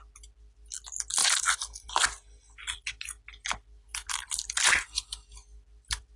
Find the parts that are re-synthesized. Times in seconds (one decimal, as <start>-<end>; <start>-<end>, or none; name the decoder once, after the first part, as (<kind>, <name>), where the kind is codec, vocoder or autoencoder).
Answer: none